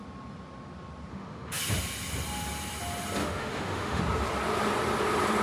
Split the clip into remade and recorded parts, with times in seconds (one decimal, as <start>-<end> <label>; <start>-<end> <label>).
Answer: 0.0-1.1 recorded; 1.1-1.6 remade; 1.6-3.2 recorded; 3.2-4.0 remade; 4.0-5.4 recorded